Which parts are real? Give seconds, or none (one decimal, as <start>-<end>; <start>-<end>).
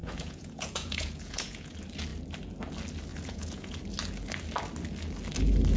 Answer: 1.7-3.1; 3.8-5.8